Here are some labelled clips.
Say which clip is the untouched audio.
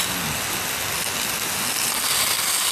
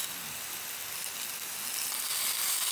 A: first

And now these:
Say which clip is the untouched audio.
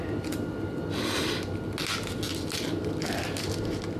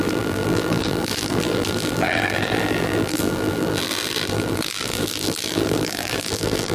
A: first